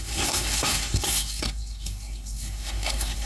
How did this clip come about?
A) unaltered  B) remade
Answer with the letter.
B